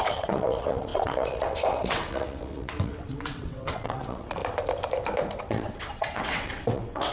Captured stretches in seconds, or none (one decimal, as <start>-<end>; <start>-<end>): 4.4-5.4